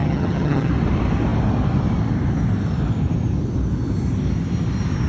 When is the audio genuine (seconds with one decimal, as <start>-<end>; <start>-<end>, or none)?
0.7-5.1